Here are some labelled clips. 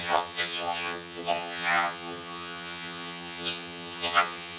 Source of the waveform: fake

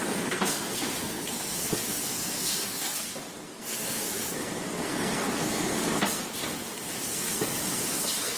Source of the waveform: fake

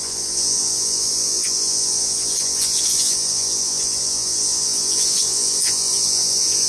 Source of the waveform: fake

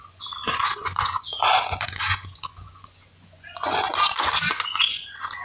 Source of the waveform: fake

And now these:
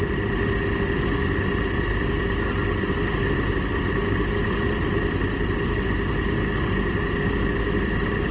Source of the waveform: real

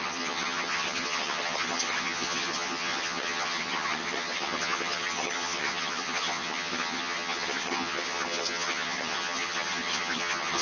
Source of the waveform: fake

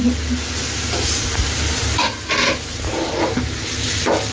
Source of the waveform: real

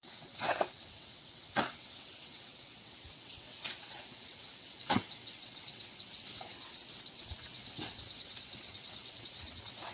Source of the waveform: fake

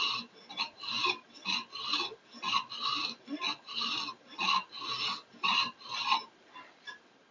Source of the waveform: real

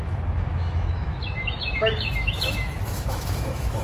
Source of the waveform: fake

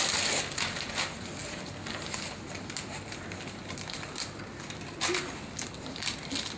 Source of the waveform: real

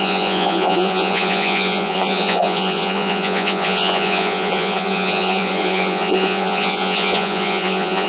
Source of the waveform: fake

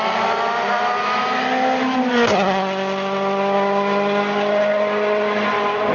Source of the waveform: real